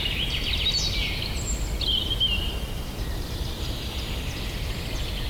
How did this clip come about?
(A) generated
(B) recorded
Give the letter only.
B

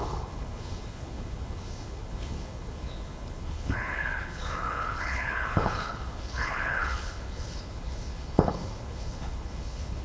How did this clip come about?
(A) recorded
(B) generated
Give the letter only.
B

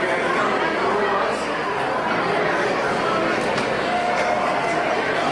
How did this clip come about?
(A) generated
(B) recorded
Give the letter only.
B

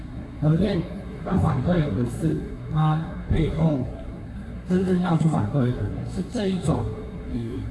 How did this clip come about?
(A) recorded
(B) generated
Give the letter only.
B